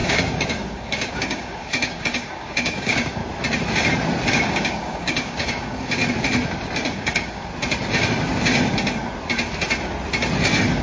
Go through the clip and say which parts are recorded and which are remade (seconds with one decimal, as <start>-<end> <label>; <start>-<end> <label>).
0.0-3.2 remade; 3.2-4.3 recorded; 4.3-6.0 remade; 6.0-6.9 recorded; 6.9-7.5 remade; 7.5-10.8 recorded